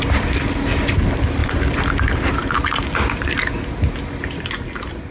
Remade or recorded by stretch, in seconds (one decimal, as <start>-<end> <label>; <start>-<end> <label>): 0.0-5.1 recorded